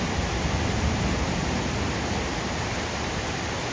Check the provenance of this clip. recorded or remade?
recorded